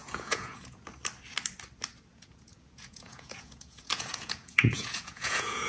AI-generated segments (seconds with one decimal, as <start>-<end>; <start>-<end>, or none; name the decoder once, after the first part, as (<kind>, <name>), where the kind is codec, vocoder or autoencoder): 0.0-0.8 (vocoder, Vocos); 2.1-5.7